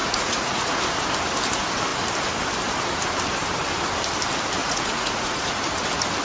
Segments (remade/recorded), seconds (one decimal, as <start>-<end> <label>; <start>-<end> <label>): 0.0-0.8 remade; 0.8-4.6 recorded; 4.6-5.6 remade; 5.6-6.2 recorded